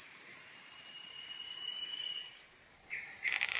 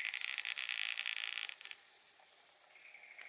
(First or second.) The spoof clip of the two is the first